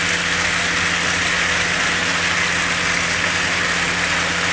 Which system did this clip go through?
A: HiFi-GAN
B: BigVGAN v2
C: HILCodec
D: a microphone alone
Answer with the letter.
D